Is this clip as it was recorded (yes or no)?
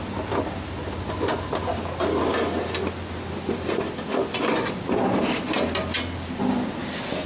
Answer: yes